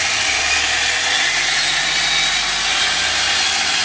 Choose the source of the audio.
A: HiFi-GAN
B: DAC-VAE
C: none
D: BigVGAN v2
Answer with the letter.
C